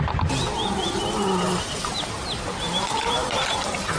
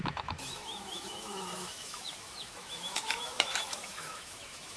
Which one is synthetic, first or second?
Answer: second